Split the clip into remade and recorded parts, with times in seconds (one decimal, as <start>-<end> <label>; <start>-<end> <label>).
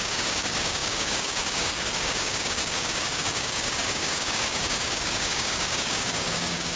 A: 0.0-6.8 remade